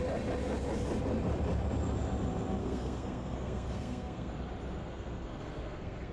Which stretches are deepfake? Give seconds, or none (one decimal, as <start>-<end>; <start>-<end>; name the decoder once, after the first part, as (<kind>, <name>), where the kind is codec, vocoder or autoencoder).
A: 2.6-4.3 (codec, SNAC); 4.8-6.1